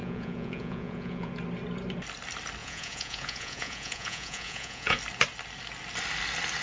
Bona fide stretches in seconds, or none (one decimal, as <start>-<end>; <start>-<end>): 1.3-2.6; 5.0-6.6